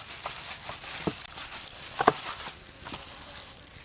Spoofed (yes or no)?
no